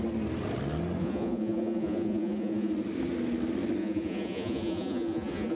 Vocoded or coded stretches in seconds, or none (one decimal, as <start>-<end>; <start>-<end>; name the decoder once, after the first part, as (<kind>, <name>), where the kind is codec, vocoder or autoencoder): 1.0-2.7 (vocoder, Vocos); 3.8-5.6